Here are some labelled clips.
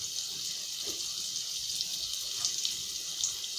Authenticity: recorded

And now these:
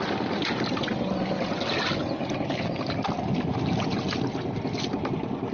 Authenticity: recorded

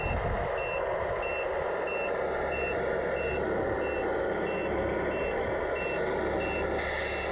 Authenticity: recorded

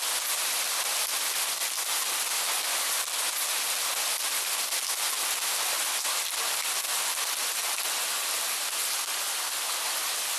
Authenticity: recorded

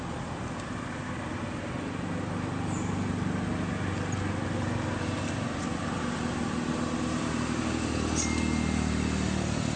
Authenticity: recorded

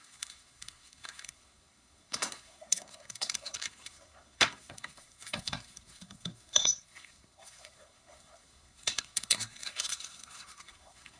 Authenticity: remade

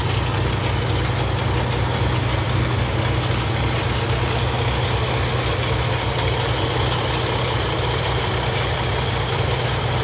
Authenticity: recorded